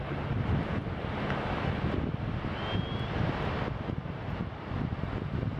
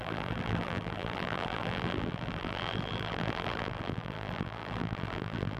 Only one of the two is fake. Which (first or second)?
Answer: second